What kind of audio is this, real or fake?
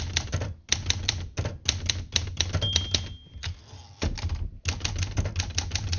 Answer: real